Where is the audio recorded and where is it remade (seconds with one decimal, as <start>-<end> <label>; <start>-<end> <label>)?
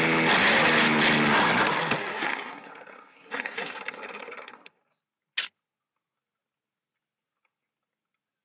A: 0.0-2.1 recorded; 2.1-4.8 remade; 4.8-8.4 recorded